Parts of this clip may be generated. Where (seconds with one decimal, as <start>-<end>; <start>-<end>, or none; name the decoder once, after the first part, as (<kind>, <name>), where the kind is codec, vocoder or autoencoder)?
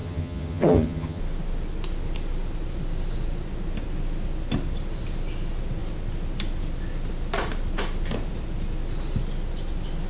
0.0-1.2 (vocoder, HiFi-GAN)